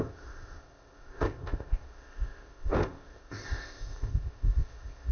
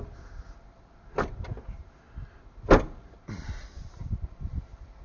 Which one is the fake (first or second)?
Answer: first